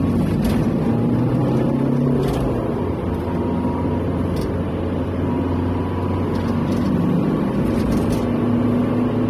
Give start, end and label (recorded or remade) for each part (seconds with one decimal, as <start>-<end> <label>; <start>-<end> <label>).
0.0-9.3 recorded